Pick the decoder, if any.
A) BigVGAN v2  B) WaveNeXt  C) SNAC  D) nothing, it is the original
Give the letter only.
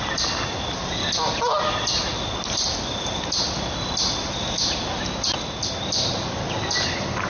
D